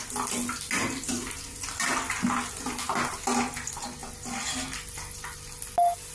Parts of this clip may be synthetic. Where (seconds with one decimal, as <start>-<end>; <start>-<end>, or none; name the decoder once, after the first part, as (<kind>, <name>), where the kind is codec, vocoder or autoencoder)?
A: none

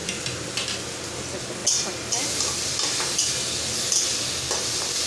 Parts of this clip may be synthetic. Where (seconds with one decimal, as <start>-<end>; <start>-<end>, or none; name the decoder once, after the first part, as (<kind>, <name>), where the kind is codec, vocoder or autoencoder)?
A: none

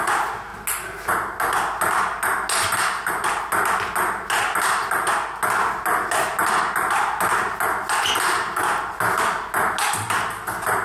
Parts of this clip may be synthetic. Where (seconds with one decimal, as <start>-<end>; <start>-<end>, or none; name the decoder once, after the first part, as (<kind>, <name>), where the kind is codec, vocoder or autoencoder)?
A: none

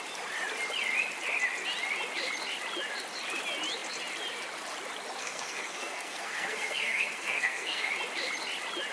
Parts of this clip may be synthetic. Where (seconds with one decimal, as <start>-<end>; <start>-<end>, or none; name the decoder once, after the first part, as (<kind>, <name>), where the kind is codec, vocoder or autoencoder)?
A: 5.2-7.9 (codec, SNAC)